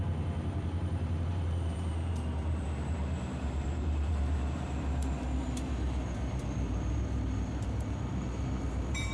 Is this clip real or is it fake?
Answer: fake